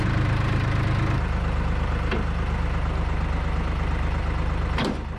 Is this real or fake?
real